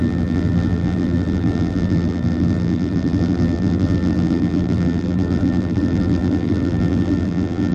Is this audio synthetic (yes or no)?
yes